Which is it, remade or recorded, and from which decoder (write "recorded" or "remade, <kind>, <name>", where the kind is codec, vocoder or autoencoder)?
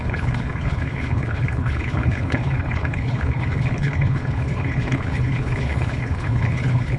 remade, codec, HILCodec